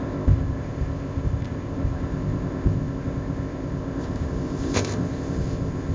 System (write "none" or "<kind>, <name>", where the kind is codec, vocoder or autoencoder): codec, ZipCodec